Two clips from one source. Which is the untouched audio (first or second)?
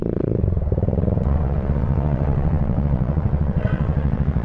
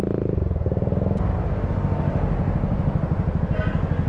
second